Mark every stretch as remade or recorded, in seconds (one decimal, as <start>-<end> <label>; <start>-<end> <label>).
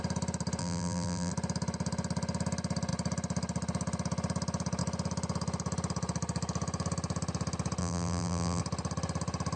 0.0-0.6 recorded; 0.6-1.3 remade; 1.3-7.8 recorded; 7.8-8.6 remade; 8.6-9.6 recorded